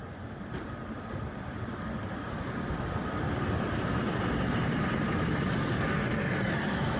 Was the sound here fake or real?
fake